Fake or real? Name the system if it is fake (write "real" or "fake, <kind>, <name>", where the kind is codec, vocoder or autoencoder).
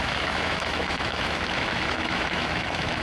fake, autoencoder, DAC-VAE